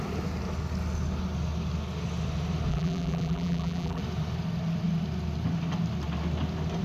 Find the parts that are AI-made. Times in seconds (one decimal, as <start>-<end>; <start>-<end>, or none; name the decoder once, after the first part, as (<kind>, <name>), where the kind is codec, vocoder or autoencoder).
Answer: 2.7-4.0 (vocoder, BigVGAN v2)